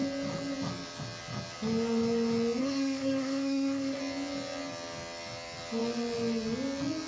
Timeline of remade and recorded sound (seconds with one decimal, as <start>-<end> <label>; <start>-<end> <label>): 0.0-2.6 recorded; 2.6-4.0 remade; 4.0-7.1 recorded